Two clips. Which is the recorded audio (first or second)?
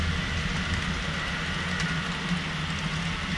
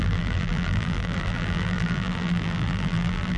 first